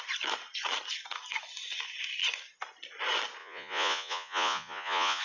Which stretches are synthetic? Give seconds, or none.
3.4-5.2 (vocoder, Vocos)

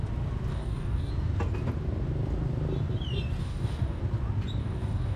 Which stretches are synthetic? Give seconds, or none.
0.5-1.1 (codec, DAC); 3.4-4.0; 4.6-5.2

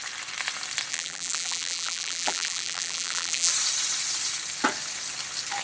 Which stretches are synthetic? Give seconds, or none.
0.9-3.5 (vocoder, BigVGAN v2)

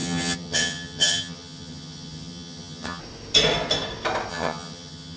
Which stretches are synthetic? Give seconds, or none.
0.0-3.0 (vocoder, HiFi-GAN); 4.3-5.2

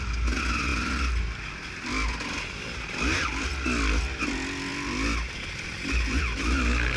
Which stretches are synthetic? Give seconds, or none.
none

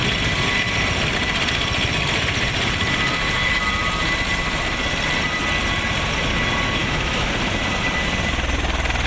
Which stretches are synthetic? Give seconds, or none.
6.8-7.3 (autoencoder, DAC-VAE)